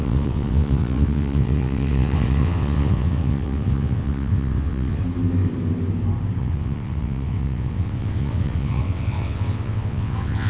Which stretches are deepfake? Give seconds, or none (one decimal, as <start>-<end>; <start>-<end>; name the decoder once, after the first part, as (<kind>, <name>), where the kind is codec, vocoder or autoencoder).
0.0-5.0 (vocoder, WaveNeXt); 6.4-10.5